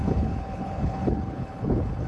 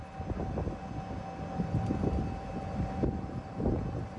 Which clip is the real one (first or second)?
second